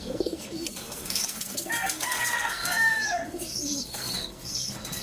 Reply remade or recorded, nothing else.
remade